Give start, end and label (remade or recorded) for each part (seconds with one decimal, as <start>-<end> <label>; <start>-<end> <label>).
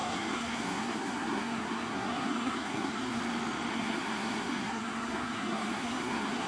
0.0-3.2 remade; 3.2-3.7 recorded; 3.7-6.5 remade